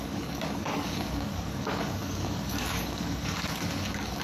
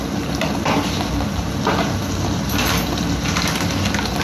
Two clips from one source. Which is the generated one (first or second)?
first